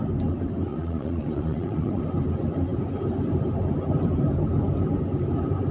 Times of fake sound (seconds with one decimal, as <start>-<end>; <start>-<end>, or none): 0.7-2.0